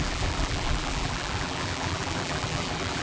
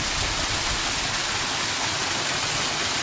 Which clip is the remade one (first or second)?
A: first